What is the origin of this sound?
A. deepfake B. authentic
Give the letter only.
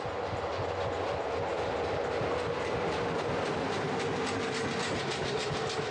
B